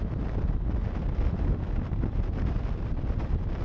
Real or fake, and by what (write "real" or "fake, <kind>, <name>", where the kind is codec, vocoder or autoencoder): real